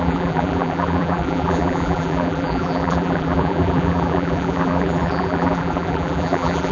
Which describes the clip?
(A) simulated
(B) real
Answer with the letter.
A